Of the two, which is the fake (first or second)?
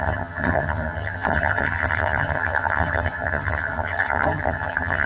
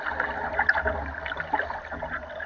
first